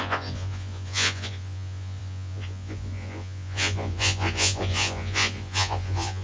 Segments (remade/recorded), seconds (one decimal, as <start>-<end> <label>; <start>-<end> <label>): 0.0-6.2 remade

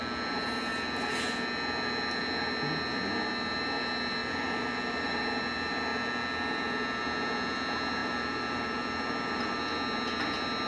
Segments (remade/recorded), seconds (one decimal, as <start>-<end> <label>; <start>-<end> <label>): 0.0-4.2 recorded; 4.2-5.2 remade; 5.2-8.0 recorded; 8.0-9.6 remade; 9.6-10.7 recorded

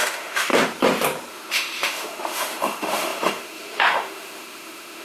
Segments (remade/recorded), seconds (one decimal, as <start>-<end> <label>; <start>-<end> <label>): 0.0-0.5 remade; 0.5-1.3 recorded; 1.3-5.0 remade

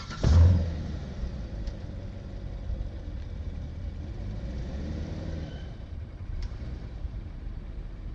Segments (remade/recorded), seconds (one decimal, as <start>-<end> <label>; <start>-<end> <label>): 0.0-1.0 remade; 1.0-3.2 recorded; 3.2-3.8 remade; 3.8-4.6 recorded; 4.6-8.1 remade

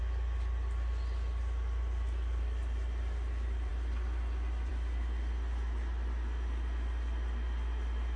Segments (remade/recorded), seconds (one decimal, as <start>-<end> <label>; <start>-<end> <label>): 0.0-8.2 recorded

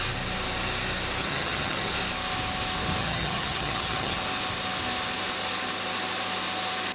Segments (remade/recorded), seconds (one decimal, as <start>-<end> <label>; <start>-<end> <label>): 0.0-1.2 recorded; 1.2-1.9 remade; 1.9-3.0 recorded; 3.0-4.2 remade; 4.2-6.9 recorded

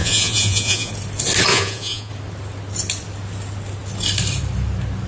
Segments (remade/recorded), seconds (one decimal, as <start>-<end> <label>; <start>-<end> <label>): 0.0-0.9 remade; 0.9-1.5 recorded; 1.5-2.1 remade; 2.1-5.1 recorded

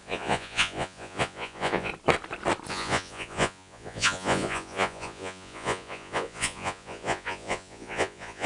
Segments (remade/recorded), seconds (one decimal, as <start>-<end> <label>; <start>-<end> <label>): 0.0-1.9 remade; 1.9-2.7 recorded; 2.7-8.5 remade